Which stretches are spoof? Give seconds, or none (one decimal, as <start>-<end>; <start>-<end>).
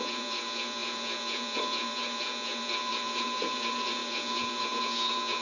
0.0-5.4